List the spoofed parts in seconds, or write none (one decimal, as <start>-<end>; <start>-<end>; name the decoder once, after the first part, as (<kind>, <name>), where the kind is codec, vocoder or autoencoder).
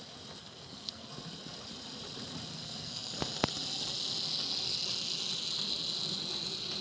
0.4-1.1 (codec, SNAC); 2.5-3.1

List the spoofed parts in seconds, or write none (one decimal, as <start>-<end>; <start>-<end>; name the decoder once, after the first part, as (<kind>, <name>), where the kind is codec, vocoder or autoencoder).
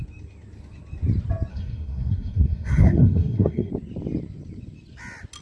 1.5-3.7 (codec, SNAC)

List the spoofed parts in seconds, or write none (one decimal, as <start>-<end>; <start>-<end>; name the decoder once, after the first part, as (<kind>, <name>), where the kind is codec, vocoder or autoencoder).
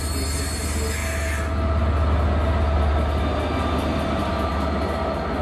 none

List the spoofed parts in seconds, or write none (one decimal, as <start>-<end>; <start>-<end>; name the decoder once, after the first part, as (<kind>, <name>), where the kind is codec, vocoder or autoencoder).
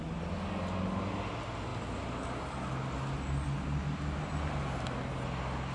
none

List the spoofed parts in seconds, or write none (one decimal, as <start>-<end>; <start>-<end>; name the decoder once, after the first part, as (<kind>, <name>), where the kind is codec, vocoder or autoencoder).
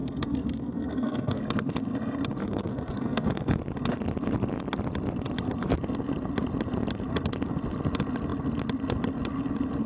0.0-1.4 (codec, SNAC); 2.4-3.6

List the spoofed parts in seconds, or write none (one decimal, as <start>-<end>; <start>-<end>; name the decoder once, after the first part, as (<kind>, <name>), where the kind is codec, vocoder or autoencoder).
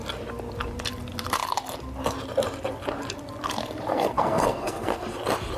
3.9-5.0 (codec, SNAC)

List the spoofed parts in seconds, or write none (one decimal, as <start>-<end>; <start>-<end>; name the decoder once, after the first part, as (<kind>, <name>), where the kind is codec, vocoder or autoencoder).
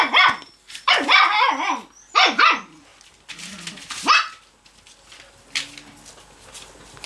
none